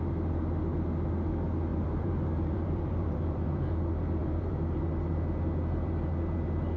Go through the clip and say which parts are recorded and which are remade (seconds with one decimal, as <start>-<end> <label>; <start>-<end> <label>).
0.0-1.7 recorded; 1.7-3.8 remade; 3.8-4.2 recorded; 4.2-4.9 remade; 4.9-6.8 recorded